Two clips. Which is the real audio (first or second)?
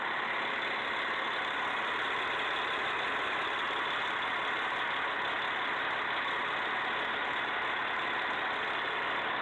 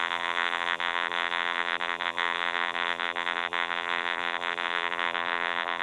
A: first